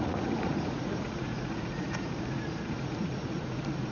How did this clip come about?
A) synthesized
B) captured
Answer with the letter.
A